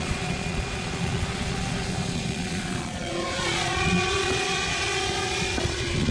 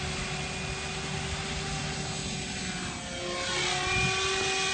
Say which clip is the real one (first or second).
second